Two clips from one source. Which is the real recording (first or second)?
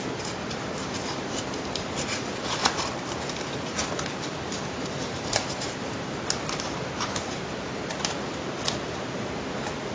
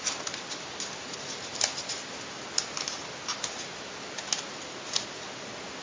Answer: second